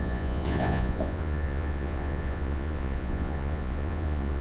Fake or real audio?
fake